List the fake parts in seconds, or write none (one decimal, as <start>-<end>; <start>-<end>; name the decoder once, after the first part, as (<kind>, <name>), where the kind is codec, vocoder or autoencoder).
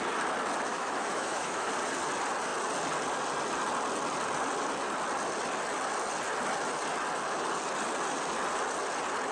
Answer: 0.7-1.7 (autoencoder, DAC-VAE)